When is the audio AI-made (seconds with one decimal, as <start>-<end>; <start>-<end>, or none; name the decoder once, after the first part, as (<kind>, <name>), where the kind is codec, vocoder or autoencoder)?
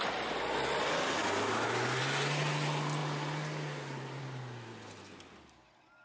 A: none